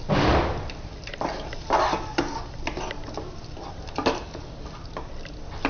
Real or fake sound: real